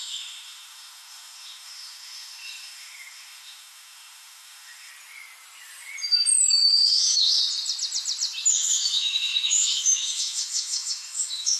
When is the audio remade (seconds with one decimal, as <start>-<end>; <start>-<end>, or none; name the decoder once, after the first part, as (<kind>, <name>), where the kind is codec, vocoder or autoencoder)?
0.0-4.9 (autoencoder, DAC-VAE); 6.5-7.4; 8.5-11.6